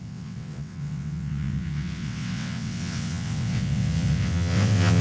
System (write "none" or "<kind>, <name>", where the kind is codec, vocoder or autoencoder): vocoder, WaveNeXt